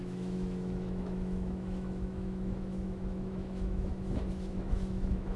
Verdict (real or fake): fake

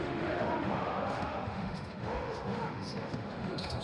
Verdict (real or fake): fake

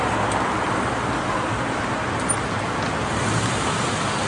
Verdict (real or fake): real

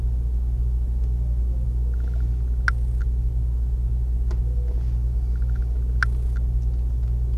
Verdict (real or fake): real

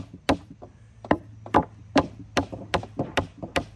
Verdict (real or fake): real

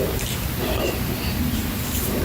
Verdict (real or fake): real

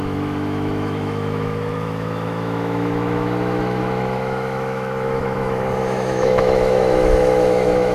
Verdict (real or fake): fake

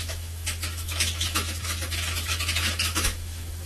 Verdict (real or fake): fake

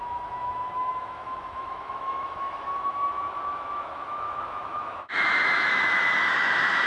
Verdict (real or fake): fake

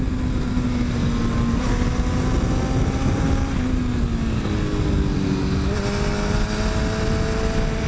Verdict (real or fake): real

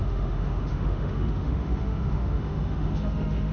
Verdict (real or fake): fake